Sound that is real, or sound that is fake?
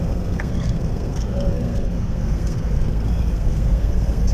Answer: fake